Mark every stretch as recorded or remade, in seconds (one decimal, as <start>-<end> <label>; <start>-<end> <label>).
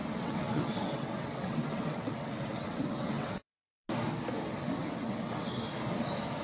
0.0-3.7 remade; 3.7-4.8 recorded; 4.8-5.6 remade; 5.6-6.4 recorded